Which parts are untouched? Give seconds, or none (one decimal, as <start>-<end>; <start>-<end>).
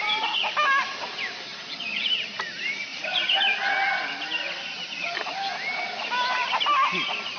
0.0-7.4